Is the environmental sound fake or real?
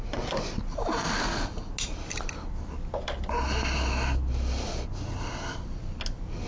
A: real